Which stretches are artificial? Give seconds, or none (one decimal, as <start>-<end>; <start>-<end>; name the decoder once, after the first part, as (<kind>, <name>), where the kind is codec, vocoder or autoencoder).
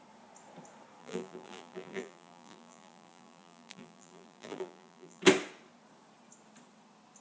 1.0-5.2 (vocoder, BigVGAN v2)